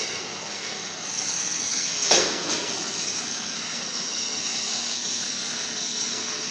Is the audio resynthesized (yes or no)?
yes